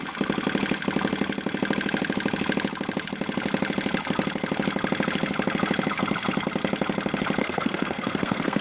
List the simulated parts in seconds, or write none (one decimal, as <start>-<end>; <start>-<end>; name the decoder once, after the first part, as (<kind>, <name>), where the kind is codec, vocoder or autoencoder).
7.4-8.6 (codec, SNAC)

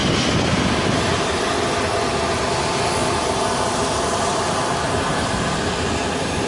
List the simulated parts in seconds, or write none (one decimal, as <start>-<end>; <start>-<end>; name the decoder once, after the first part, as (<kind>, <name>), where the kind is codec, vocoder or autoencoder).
0.0-0.6 (vocoder, BigVGAN v2); 3.0-5.4

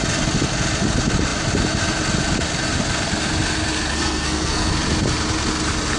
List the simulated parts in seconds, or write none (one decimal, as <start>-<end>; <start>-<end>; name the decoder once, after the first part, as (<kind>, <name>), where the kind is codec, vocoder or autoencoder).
3.9-4.7 (codec, SNAC)

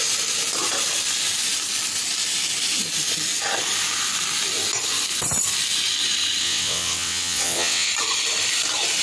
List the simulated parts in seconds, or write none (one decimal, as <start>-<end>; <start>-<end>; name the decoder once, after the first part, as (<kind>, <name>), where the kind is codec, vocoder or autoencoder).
6.4-7.9 (vocoder, WaveNeXt)

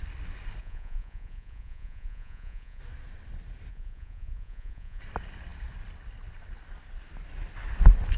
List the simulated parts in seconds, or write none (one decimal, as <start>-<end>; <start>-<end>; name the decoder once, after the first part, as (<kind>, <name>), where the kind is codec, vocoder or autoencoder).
0.6-2.8 (vocoder, Vocos); 3.7-5.0

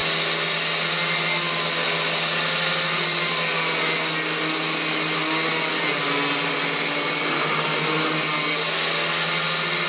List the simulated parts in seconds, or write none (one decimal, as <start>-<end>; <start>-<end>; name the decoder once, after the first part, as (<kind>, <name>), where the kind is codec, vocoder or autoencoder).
none

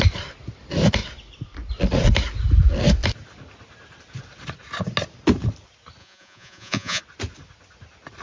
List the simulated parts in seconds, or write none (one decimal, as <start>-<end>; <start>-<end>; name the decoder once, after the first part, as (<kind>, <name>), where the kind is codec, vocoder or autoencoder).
6.0-7.0 (vocoder, Vocos)